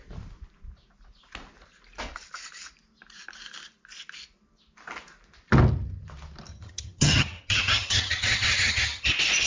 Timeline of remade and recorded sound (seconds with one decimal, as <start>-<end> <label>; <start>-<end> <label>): 0.0-6.5 recorded; 6.5-9.1 remade; 9.1-9.5 recorded